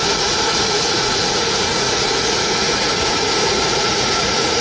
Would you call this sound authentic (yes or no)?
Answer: no